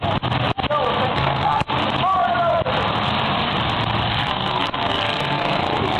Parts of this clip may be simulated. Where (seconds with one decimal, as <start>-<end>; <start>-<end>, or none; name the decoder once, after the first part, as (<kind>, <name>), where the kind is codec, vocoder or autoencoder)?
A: 1.1-1.7 (codec, SNAC); 4.3-5.6